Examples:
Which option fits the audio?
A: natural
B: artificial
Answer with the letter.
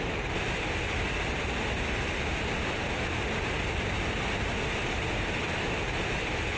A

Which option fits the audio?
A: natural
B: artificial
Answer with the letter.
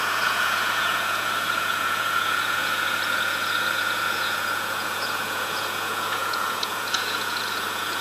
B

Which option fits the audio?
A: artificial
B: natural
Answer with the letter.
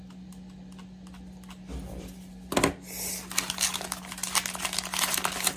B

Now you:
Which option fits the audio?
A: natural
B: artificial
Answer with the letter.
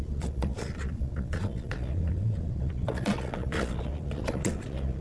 B